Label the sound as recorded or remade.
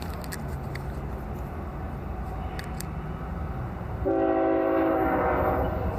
recorded